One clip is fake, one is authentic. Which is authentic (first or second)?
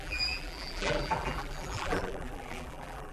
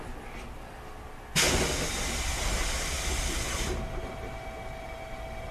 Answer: second